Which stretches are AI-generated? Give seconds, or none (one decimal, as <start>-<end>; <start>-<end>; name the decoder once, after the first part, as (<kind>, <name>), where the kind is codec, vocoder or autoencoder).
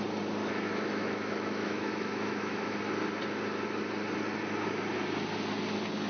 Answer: 0.4-2.8 (autoencoder, DAC-VAE)